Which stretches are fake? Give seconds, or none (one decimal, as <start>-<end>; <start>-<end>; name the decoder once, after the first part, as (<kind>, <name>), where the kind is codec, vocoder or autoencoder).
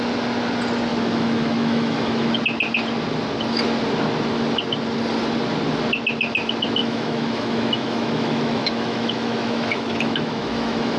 0.9-2.4 (autoencoder, DAC-VAE); 6.8-11.0